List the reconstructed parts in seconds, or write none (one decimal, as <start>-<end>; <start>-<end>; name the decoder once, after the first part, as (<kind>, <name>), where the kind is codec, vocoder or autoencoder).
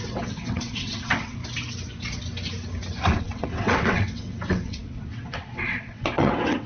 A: 0.0-1.4 (vocoder, WaveNeXt); 3.1-6.7